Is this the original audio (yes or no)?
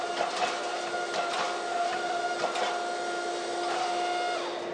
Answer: yes